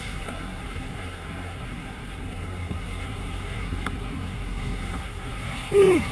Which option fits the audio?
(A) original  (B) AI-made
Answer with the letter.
B